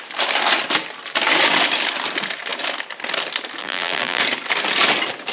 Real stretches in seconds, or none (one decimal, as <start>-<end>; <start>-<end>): 0.0-3.6; 4.2-5.3